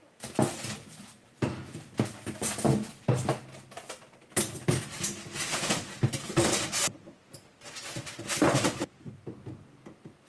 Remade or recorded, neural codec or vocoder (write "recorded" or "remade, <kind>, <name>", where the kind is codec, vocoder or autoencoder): recorded